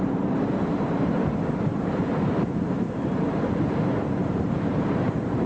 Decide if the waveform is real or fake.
fake